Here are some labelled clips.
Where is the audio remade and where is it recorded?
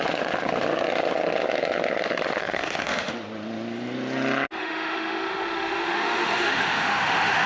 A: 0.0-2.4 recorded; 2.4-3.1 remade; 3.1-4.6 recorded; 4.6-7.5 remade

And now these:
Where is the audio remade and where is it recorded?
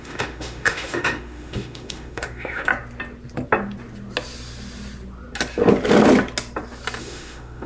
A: 0.0-2.7 remade; 2.7-7.0 recorded; 7.0-7.7 remade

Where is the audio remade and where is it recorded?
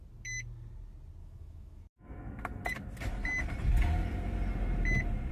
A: 0.0-1.2 recorded; 1.2-2.4 remade; 2.4-5.3 recorded